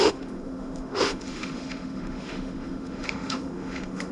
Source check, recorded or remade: remade